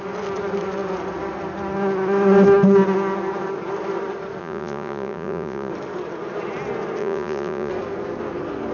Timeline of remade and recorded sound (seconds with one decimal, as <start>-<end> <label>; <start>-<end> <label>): 0.0-4.4 recorded; 4.4-5.7 remade; 5.7-7.0 recorded; 7.0-7.7 remade; 7.7-8.7 recorded